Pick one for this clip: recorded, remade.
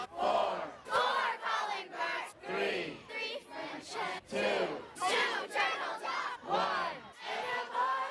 recorded